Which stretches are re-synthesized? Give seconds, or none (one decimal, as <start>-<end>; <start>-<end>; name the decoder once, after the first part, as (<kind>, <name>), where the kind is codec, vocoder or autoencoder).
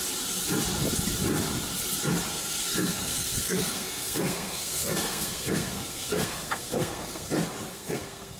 2.3-7.3 (codec, SNAC); 7.7-8.4